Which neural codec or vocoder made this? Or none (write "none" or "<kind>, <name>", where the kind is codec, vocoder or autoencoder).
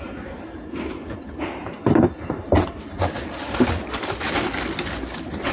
vocoder, BigVGAN v2